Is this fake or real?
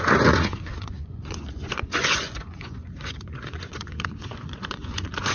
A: fake